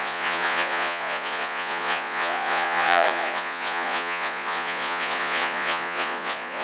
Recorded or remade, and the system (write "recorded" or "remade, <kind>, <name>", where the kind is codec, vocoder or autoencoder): remade, vocoder, Vocos